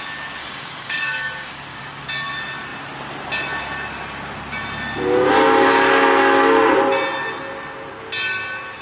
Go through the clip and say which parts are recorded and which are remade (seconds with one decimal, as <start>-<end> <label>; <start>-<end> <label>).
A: 0.0-0.4 recorded; 0.4-2.0 remade; 2.0-8.8 recorded